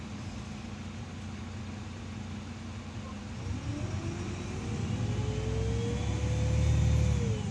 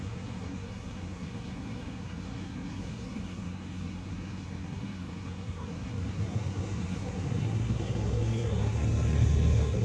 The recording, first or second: first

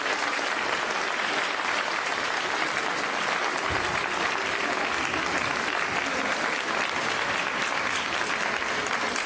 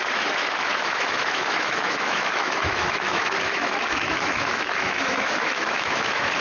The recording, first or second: first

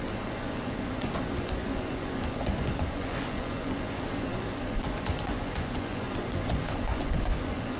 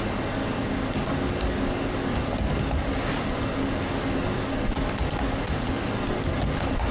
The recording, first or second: second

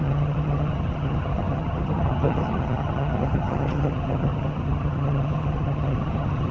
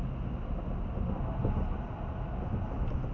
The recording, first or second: second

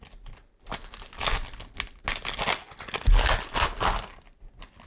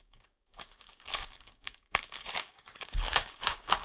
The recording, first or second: first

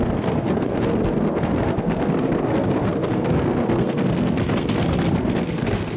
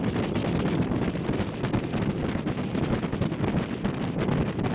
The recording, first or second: second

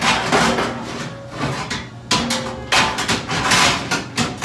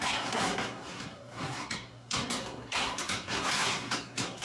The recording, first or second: first